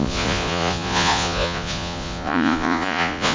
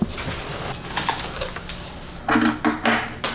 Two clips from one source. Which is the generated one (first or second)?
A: first